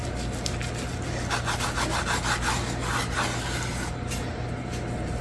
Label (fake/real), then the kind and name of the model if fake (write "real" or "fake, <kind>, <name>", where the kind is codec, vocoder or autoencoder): real